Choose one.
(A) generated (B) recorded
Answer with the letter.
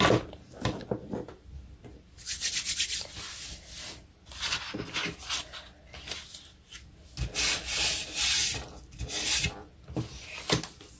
B